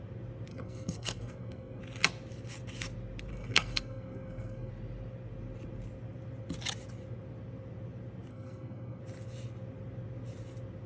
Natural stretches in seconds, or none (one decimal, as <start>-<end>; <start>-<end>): 0.0-0.5; 1.8-3.3; 4.7-8.3; 9.0-10.9